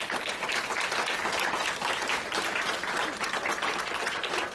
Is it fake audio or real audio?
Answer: real